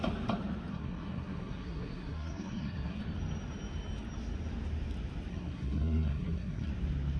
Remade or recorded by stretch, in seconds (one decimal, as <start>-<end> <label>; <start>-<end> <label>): 0.0-0.7 recorded; 0.7-3.0 remade; 3.0-5.3 recorded; 5.3-6.7 remade; 6.7-7.2 recorded